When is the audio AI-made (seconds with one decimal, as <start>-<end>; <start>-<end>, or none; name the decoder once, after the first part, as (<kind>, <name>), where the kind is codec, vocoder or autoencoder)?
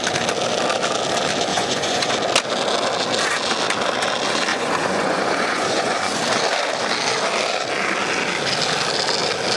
1.5-2.1 (vocoder, Vocos); 4.5-6.2